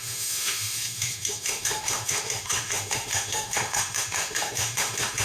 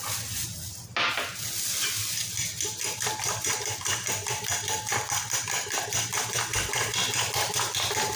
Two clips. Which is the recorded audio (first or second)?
second